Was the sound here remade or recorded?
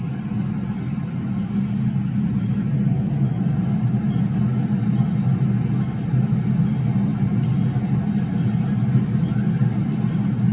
recorded